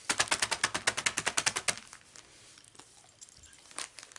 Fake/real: real